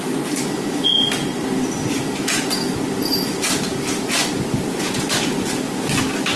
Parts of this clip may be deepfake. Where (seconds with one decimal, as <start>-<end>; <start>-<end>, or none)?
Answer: 0.0-6.4